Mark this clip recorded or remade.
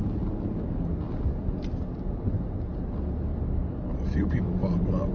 recorded